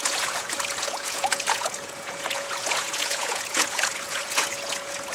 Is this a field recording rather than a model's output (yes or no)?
no